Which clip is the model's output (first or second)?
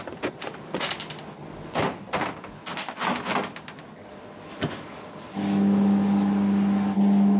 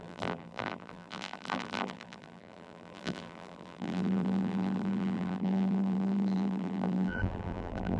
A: second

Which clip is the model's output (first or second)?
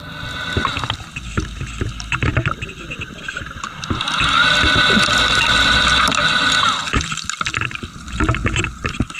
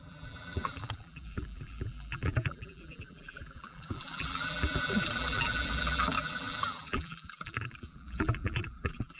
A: second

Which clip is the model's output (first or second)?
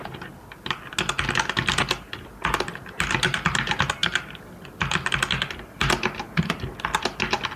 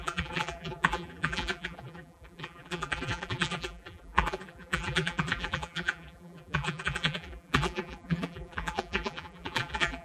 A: second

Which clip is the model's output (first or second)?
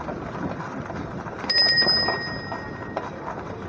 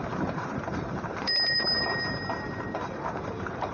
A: second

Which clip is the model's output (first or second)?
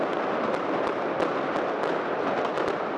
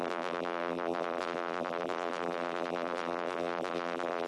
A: second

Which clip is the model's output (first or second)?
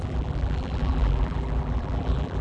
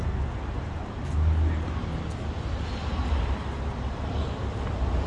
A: first